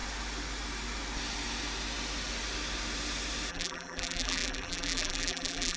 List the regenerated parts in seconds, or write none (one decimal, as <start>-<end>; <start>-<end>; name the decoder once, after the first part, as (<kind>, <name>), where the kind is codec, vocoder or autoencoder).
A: 3.5-5.8 (vocoder, BigVGAN v2)